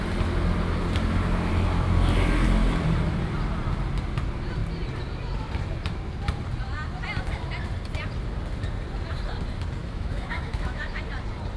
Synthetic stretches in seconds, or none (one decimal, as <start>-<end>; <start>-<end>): 9.8-11.0